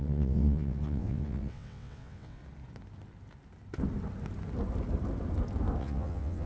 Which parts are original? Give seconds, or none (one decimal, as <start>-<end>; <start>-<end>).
2.4-5.8